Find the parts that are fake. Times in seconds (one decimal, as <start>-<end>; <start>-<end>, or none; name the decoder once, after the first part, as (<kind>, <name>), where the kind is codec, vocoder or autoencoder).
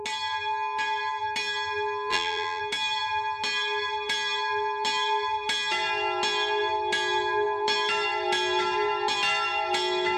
2.1-2.6 (vocoder, BigVGAN v2)